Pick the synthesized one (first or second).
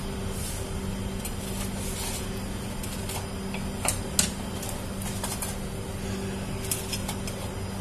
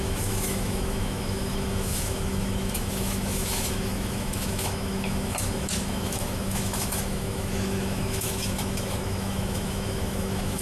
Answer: second